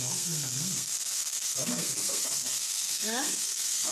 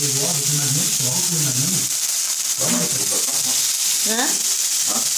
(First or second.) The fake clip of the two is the first